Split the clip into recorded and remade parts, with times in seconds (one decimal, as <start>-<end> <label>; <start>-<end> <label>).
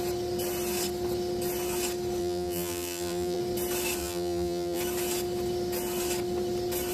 0.0-2.2 recorded; 2.2-3.4 remade; 3.4-4.0 recorded; 4.0-4.8 remade; 4.8-6.9 recorded